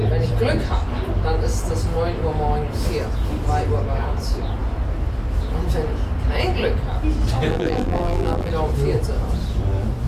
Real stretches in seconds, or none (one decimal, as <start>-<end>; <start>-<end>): 0.0-7.5; 8.5-10.1